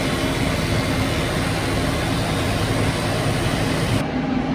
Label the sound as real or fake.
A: real